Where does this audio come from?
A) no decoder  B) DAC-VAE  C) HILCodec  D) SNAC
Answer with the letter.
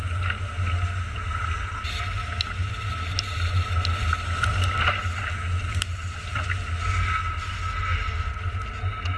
A